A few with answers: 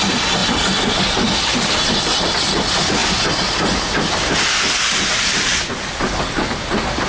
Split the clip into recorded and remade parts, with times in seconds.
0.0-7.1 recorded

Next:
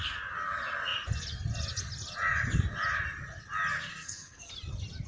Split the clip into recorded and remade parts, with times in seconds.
0.0-3.9 recorded; 3.9-4.5 remade; 4.5-5.1 recorded

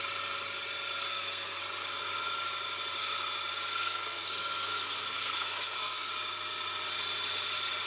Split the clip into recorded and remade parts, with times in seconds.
0.0-1.1 recorded; 1.1-1.6 remade; 1.6-3.7 recorded; 3.7-6.1 remade; 6.1-7.9 recorded

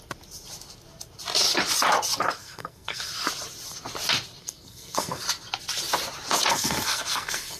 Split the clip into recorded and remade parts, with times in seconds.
0.0-2.4 recorded; 2.4-3.1 remade; 3.1-4.4 recorded; 4.4-5.2 remade; 5.2-6.5 recorded; 6.5-7.6 remade

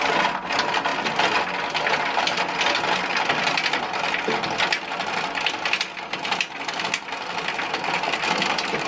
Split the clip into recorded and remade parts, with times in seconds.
0.0-8.9 recorded

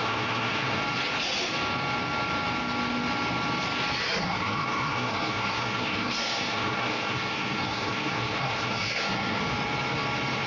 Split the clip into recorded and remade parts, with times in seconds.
0.0-0.8 remade; 0.8-4.2 recorded; 4.2-9.4 remade; 9.4-10.5 recorded

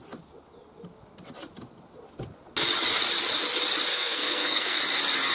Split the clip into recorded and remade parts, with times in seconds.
0.0-3.9 recorded; 3.9-4.8 remade; 4.8-5.3 recorded